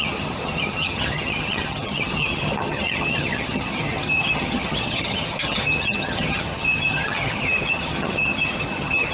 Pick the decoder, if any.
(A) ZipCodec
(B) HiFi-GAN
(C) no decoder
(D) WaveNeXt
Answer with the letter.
B